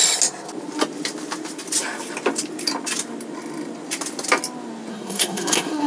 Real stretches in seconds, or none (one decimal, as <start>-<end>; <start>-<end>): 0.0-4.9